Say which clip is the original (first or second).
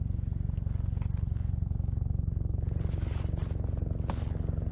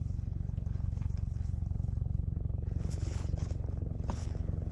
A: first